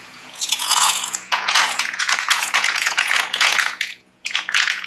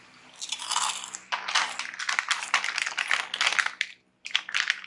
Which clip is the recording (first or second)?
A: second